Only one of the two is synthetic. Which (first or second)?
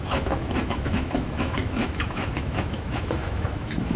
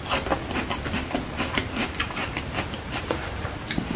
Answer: first